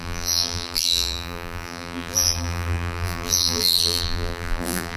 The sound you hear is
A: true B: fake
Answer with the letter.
B